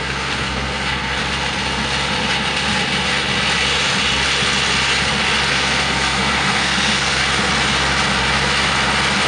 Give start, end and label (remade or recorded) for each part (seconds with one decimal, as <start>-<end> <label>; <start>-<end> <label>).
0.0-1.2 remade; 1.2-5.5 recorded; 5.5-7.2 remade; 7.2-9.3 recorded